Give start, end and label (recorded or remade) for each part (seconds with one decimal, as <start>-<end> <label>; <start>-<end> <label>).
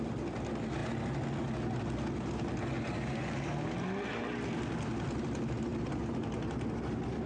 0.0-7.3 recorded